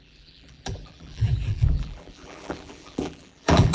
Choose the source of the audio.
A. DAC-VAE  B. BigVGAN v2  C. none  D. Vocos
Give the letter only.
B